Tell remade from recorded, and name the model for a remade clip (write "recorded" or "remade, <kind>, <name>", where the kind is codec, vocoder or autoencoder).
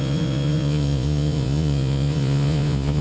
remade, vocoder, Vocos